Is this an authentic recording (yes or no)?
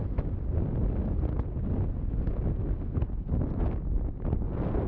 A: yes